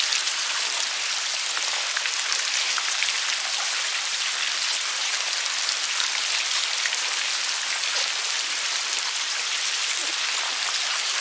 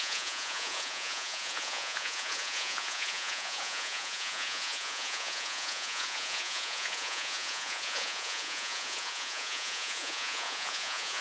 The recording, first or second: first